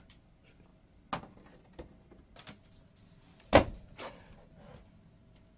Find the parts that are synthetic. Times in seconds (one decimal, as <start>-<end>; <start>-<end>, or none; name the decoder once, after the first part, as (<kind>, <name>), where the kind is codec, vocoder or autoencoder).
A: none